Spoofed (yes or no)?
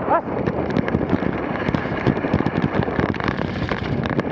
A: yes